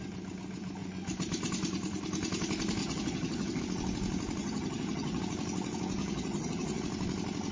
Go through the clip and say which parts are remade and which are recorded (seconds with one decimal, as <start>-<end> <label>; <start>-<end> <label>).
0.0-2.8 recorded; 2.8-3.6 remade; 3.6-4.4 recorded; 4.4-5.2 remade; 5.2-6.0 recorded; 6.0-6.8 remade; 6.8-7.5 recorded